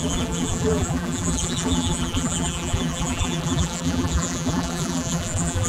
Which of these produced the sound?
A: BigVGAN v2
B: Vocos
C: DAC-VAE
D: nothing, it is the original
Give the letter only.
A